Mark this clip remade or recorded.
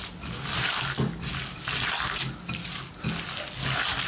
recorded